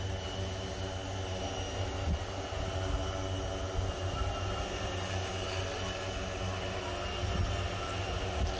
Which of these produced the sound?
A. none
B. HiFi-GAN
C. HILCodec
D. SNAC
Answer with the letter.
A